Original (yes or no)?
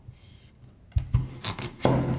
yes